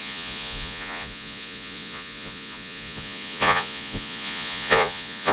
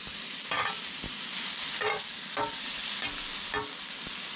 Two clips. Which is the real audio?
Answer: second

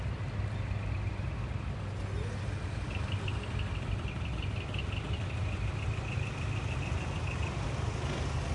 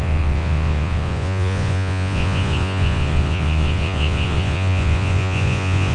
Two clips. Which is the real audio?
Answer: first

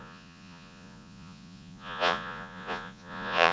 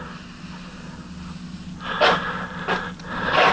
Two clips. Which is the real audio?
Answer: second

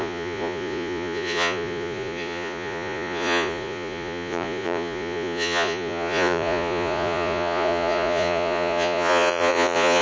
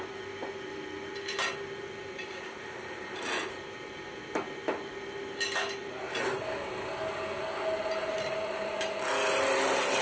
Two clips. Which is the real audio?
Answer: second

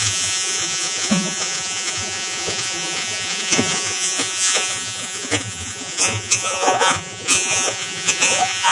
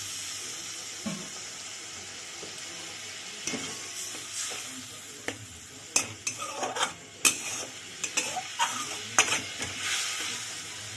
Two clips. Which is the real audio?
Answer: second